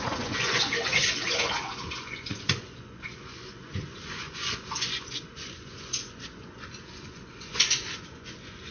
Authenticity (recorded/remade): remade